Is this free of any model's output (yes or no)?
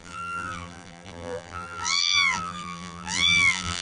no